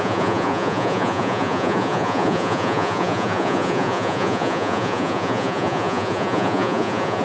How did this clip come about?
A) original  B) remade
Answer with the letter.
B